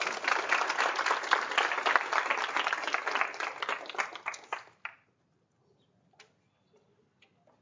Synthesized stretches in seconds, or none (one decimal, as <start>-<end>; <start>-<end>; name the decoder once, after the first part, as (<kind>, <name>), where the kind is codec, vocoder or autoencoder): none